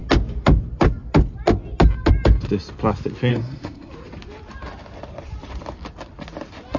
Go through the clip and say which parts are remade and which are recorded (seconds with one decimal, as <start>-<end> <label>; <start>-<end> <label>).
0.0-3.3 recorded; 3.3-3.9 remade; 3.9-6.8 recorded